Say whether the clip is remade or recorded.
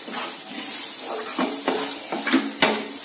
recorded